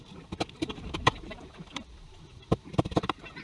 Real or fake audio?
fake